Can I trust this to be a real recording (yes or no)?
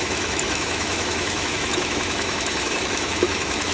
no